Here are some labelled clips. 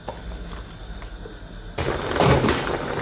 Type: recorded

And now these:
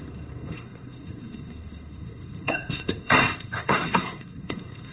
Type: remade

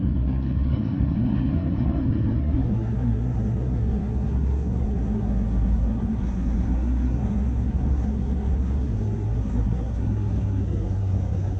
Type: remade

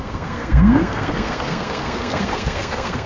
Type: remade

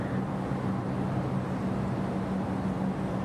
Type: recorded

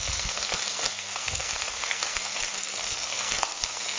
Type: remade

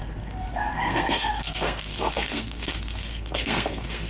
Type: remade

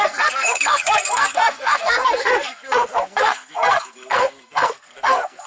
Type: remade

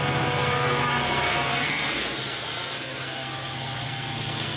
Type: remade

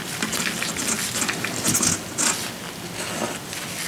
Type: recorded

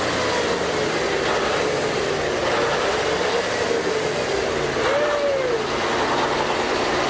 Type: recorded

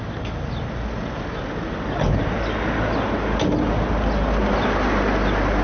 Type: recorded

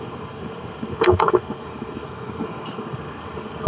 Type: remade